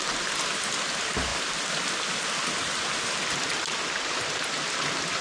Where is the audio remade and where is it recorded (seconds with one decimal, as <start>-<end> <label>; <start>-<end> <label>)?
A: 0.0-5.2 recorded